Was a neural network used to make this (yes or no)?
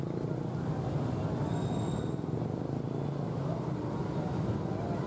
no